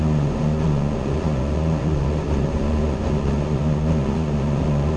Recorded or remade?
remade